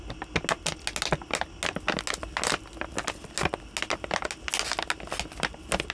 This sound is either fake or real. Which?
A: real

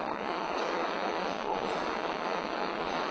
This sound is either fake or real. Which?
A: fake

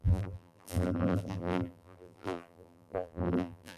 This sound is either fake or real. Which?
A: fake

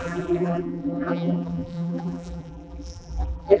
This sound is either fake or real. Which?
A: fake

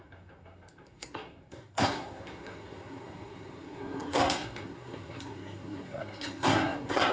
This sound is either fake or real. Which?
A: fake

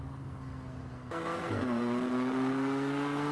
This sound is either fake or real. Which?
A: fake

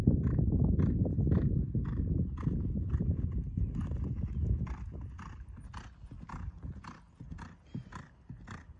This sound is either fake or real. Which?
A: real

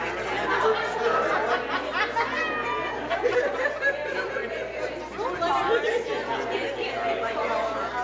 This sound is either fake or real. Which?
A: real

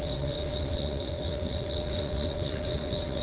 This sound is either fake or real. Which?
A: fake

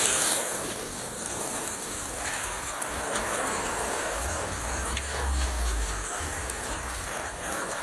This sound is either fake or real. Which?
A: fake